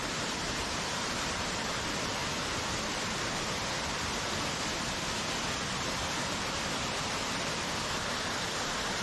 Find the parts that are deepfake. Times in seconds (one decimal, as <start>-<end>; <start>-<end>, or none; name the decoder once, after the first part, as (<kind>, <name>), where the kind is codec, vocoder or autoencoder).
0.0-2.2 (vocoder, BigVGAN v2); 2.7-9.0